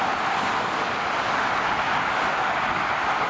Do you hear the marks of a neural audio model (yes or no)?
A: no